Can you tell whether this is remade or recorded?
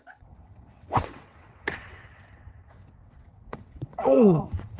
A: remade